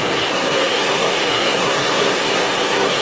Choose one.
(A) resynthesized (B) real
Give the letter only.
A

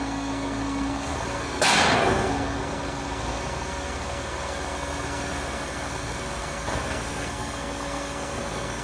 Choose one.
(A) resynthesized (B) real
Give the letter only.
A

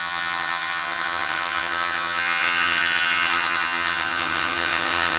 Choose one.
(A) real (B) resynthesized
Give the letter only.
B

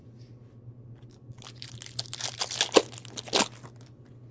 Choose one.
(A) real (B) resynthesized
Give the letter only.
A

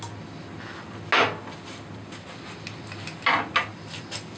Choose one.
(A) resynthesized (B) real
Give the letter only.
B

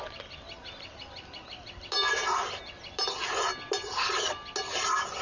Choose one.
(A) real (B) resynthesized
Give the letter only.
A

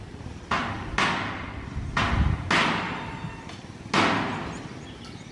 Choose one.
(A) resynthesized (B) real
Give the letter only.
B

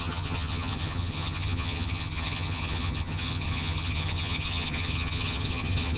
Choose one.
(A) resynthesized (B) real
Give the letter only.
A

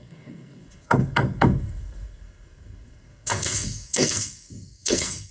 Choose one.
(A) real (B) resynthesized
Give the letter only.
B